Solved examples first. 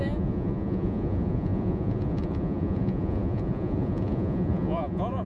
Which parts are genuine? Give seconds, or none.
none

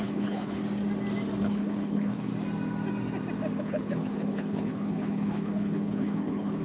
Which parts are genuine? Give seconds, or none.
0.6-1.4; 2.3-3.6